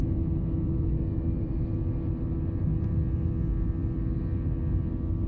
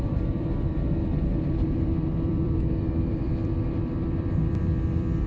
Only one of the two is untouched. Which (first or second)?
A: first